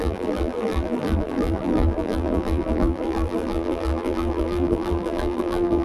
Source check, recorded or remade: remade